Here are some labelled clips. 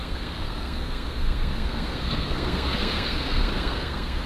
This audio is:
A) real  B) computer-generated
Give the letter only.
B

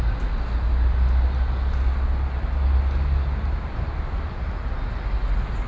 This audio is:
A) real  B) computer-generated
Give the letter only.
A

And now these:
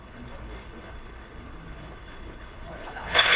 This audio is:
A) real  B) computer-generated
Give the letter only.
B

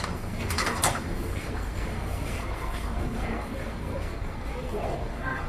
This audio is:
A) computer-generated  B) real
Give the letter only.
A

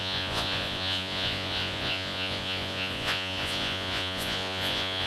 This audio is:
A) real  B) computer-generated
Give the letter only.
B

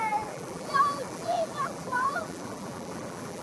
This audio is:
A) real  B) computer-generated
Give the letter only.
B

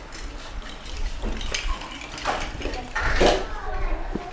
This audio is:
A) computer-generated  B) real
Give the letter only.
B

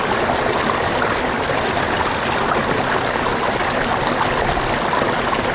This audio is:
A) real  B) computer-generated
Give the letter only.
A